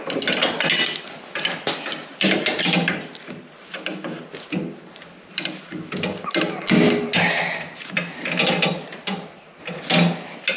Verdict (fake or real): real